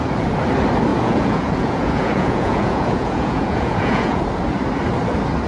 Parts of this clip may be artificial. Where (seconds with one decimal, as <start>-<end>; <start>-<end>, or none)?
0.9-4.2